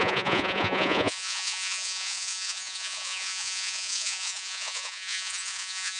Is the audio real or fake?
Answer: fake